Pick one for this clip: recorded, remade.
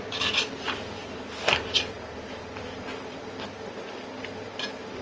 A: recorded